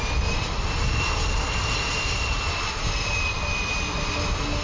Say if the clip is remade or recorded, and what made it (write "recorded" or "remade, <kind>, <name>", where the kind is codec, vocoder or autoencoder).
recorded